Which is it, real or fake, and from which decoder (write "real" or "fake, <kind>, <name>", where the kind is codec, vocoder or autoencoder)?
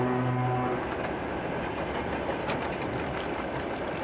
real